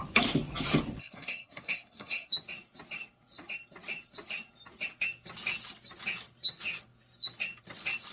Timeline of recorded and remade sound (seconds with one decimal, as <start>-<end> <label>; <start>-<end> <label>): 0.0-1.0 recorded; 1.0-2.3 remade; 2.3-8.1 recorded